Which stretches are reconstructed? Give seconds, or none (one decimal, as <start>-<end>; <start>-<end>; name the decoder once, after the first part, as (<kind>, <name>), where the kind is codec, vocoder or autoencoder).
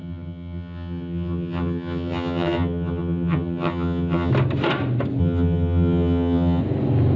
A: 0.0-4.3 (vocoder, HiFi-GAN); 5.2-6.6